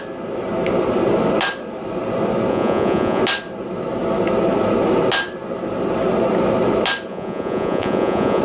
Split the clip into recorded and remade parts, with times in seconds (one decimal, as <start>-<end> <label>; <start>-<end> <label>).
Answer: 0.0-2.5 recorded; 2.5-3.2 remade; 3.2-7.1 recorded; 7.1-8.4 remade

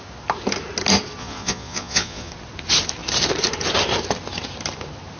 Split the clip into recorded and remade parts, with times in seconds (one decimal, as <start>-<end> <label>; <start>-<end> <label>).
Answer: 0.0-1.2 recorded; 1.2-2.3 remade; 2.3-5.2 recorded

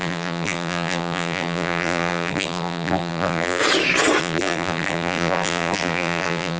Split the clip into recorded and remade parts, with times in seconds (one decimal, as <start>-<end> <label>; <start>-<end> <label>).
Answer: 0.0-3.6 remade; 3.6-4.2 recorded; 4.2-6.6 remade

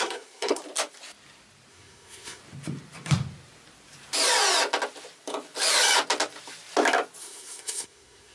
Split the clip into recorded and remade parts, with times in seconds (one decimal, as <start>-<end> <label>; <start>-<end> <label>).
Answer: 0.0-0.6 remade; 0.6-1.7 recorded; 1.7-2.4 remade; 2.4-7.2 recorded; 7.2-8.3 remade

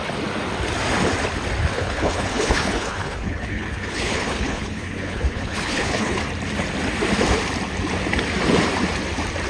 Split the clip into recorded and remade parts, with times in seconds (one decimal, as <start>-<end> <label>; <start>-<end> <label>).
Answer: 0.0-1.7 recorded; 1.7-6.2 remade; 6.2-9.5 recorded

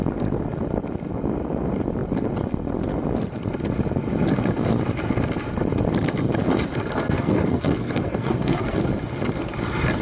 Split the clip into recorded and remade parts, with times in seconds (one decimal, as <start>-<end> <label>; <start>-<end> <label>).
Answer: 0.0-7.0 recorded; 7.0-8.8 remade; 8.8-10.0 recorded